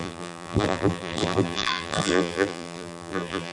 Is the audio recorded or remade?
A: remade